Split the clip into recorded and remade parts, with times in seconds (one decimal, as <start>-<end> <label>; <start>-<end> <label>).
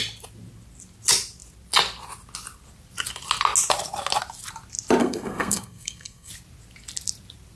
0.0-5.0 recorded; 5.0-6.3 remade; 6.3-7.6 recorded